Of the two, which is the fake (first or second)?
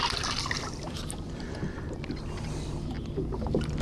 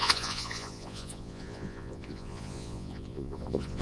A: second